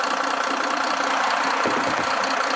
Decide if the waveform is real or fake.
real